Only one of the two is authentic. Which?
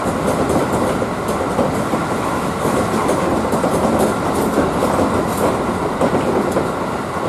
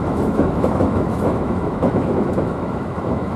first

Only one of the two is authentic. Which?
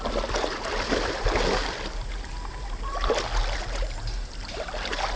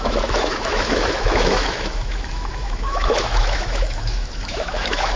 first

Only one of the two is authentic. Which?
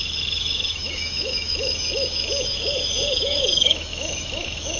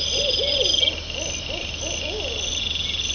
second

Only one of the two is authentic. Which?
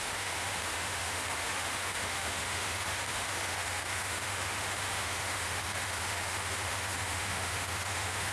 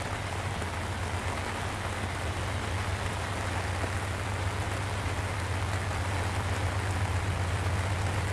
second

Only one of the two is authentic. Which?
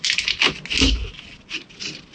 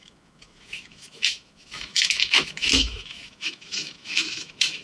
first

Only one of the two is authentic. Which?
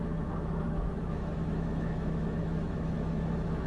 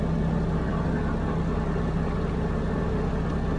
second